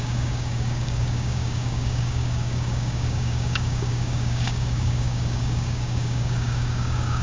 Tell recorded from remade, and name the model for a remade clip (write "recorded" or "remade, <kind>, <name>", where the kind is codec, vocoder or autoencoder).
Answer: remade, codec, DAC